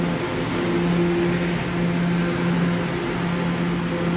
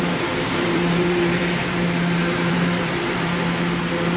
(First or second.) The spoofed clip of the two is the second